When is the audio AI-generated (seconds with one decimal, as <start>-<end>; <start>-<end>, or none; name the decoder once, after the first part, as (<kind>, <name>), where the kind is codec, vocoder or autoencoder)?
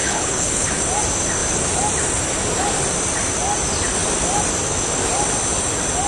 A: 0.0-0.8 (codec, HILCodec)